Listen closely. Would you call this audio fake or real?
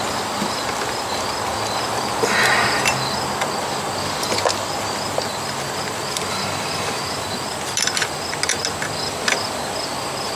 real